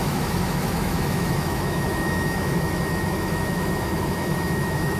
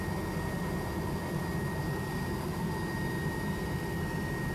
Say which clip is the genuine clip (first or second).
second